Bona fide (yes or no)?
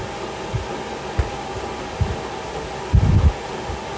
yes